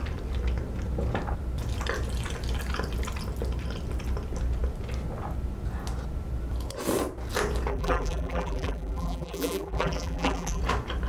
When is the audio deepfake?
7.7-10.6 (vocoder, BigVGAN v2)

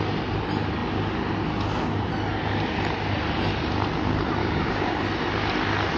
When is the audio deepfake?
4.4-4.9 (codec, DAC)

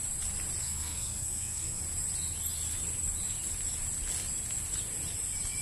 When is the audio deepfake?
0.6-1.8 (codec, SNAC)